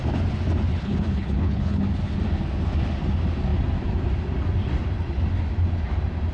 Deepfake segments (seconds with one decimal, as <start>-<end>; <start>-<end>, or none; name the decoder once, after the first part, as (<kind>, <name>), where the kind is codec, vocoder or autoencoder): 0.7-1.8 (codec, HILCodec)